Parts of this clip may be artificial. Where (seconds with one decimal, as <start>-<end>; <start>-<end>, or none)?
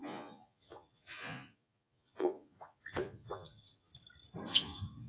0.0-3.9; 4.5-5.1